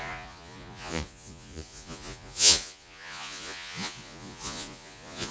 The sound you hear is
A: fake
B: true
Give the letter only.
A